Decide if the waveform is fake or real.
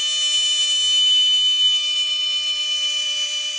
real